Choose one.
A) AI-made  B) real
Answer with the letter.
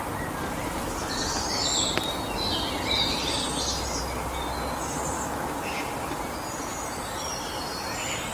B